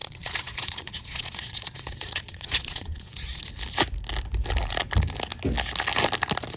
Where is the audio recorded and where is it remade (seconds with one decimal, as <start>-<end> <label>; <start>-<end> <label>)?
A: 0.0-3.4 remade; 3.4-6.6 recorded